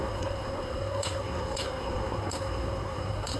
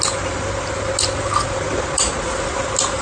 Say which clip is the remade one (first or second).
first